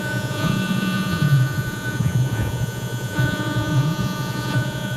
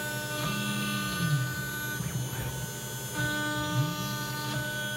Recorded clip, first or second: second